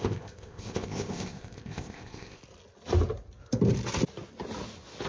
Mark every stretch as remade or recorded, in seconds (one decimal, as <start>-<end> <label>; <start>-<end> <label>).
0.0-2.4 remade; 2.4-5.1 recorded

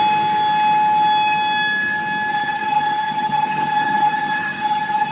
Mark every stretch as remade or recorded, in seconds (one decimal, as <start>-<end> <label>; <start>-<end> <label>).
0.0-2.3 recorded; 2.3-5.1 remade

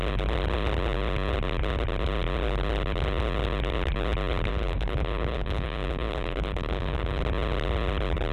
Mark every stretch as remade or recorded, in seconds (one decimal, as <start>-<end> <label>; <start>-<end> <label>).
0.0-4.5 recorded; 4.5-7.2 remade; 7.2-8.3 recorded

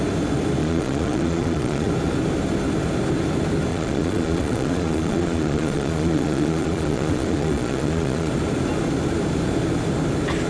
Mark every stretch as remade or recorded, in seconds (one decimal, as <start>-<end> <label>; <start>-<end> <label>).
0.0-0.6 recorded; 0.6-1.9 remade; 1.9-3.7 recorded; 3.7-8.3 remade; 8.3-10.5 recorded

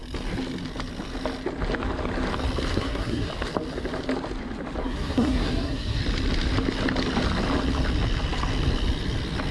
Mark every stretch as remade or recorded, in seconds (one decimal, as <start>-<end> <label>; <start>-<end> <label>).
0.0-2.7 recorded; 2.7-3.3 remade; 3.3-4.8 recorded; 4.8-6.0 remade; 6.0-9.5 recorded

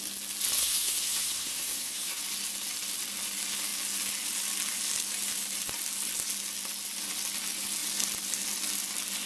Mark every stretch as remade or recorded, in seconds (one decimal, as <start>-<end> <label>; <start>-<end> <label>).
0.0-0.6 recorded; 0.6-2.2 remade; 2.2-9.3 recorded